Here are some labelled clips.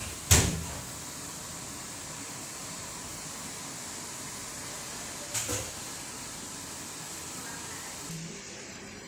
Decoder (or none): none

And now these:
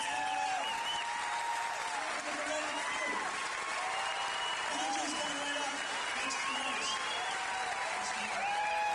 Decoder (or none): none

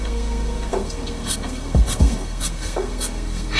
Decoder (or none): codec, SNAC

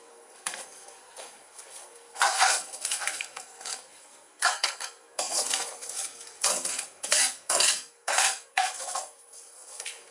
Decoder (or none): codec, SNAC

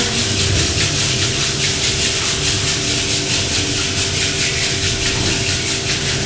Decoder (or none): none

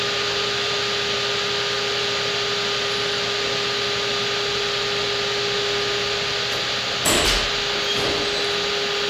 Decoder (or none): none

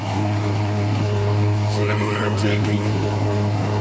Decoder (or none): codec, SNAC